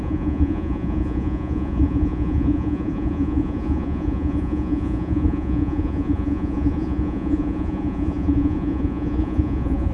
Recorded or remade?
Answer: remade